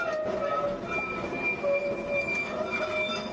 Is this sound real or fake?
real